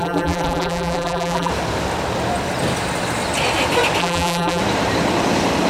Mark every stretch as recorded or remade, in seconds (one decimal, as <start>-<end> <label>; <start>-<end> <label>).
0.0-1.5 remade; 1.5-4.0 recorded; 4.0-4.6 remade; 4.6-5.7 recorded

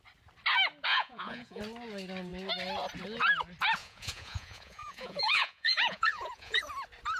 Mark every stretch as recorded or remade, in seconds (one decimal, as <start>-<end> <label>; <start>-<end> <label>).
0.0-0.9 recorded; 0.9-1.6 remade; 1.6-3.8 recorded; 3.8-6.6 remade; 6.6-7.2 recorded

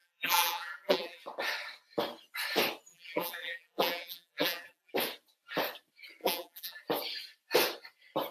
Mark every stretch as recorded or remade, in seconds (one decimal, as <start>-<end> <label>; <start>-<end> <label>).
0.0-1.2 remade; 1.2-2.9 recorded; 2.9-4.9 remade; 4.9-6.2 recorded; 6.2-6.8 remade; 6.8-8.3 recorded

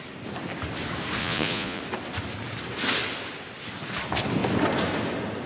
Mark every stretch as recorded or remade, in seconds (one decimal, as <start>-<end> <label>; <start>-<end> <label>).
0.0-1.2 recorded; 1.2-1.8 remade; 1.8-5.5 recorded

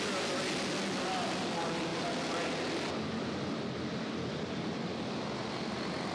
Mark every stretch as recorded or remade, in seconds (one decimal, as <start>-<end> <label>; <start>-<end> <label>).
0.0-6.1 recorded

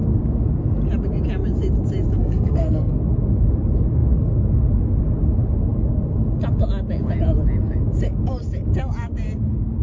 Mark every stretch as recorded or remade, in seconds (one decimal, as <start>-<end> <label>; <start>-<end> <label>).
0.0-2.2 recorded; 2.2-3.0 remade; 3.0-9.8 recorded

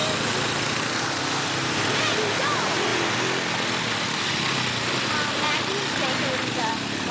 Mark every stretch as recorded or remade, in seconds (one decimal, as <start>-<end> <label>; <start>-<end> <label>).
0.0-7.1 recorded